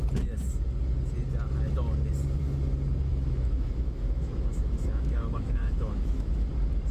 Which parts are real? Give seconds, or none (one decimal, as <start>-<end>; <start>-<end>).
0.0-3.1; 6.5-6.9